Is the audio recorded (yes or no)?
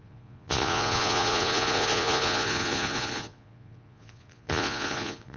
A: no